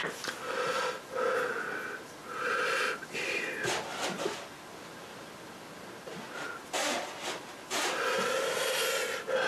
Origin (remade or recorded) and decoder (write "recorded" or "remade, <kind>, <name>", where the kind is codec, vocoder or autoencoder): recorded